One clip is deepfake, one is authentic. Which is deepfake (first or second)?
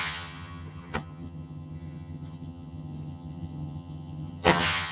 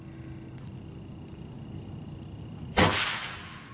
first